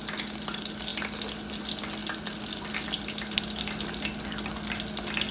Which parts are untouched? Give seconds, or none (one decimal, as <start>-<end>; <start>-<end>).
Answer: 0.0-5.3